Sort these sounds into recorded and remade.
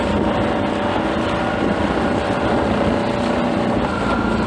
recorded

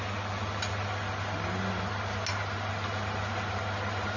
recorded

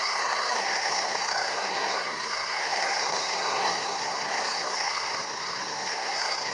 remade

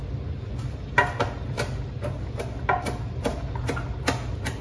recorded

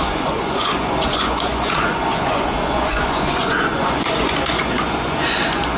remade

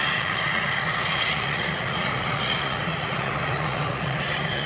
remade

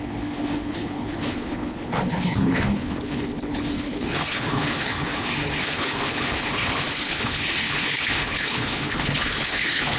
remade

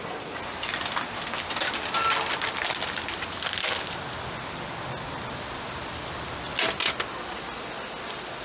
recorded